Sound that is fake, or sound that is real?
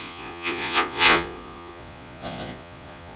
fake